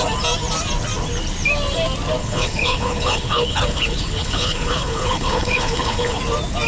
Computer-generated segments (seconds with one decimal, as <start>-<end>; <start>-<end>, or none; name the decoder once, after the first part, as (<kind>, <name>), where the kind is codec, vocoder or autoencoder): 2.2-6.2 (codec, HILCodec)